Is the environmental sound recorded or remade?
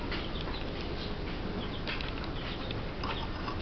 recorded